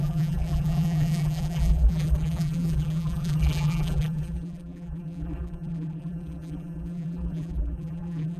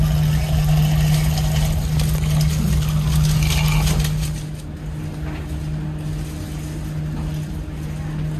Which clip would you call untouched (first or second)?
second